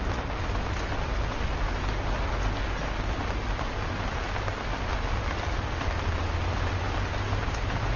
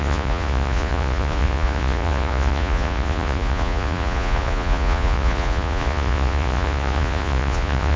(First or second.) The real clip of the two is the first